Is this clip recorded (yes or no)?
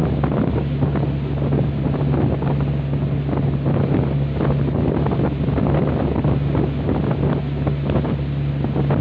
yes